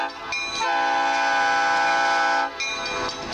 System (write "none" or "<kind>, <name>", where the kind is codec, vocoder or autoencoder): none